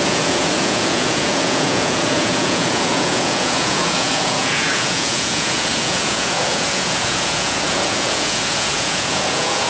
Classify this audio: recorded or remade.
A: remade